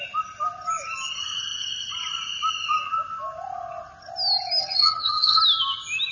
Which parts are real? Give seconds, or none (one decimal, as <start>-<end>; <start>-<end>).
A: 0.0-4.6; 5.4-6.1